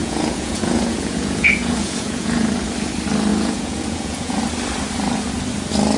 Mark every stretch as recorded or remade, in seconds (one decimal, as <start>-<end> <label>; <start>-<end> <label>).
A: 0.0-2.5 remade; 2.5-3.3 recorded; 3.3-4.4 remade; 4.4-6.0 recorded